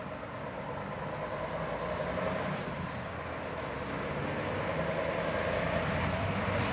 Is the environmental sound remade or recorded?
recorded